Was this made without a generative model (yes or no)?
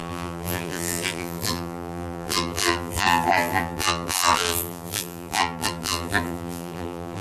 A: no